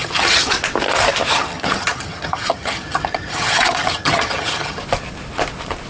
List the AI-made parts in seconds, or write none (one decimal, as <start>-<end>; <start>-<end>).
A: 0.0-0.5; 1.3-4.8